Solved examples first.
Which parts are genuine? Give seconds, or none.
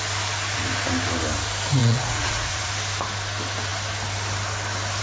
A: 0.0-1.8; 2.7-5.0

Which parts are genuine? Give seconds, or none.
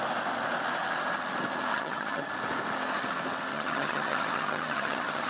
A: 0.0-1.7; 2.3-3.5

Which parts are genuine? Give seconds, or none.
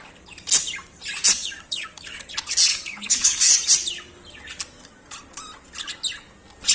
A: 0.0-1.4; 2.3-2.7; 3.5-6.7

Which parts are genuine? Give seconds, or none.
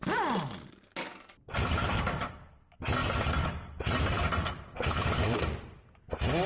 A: 0.0-6.5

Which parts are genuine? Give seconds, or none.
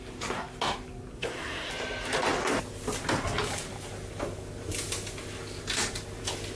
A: 0.0-1.1; 1.7-6.6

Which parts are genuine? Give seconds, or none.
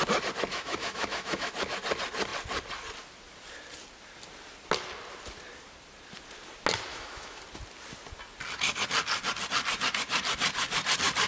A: 0.0-0.5; 1.5-6.9; 7.4-11.3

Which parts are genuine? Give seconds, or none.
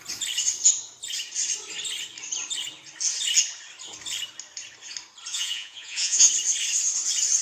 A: 0.0-5.3; 6.3-7.4